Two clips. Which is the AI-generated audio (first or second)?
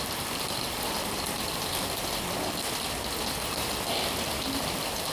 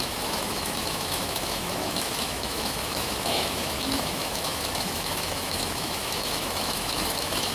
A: second